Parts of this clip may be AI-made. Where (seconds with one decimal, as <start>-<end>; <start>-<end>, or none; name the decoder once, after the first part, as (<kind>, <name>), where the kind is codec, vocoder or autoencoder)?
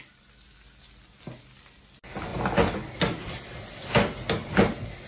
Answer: none